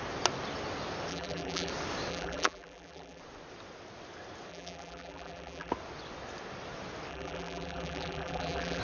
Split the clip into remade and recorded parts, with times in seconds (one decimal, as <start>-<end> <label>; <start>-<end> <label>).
0.0-1.1 recorded; 1.1-1.7 remade; 1.7-2.1 recorded; 2.1-3.2 remade; 3.2-4.5 recorded; 4.5-5.7 remade; 5.7-7.1 recorded; 7.1-8.8 remade